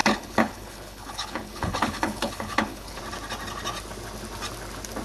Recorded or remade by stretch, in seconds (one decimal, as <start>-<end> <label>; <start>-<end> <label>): 0.0-3.0 remade; 3.0-5.0 recorded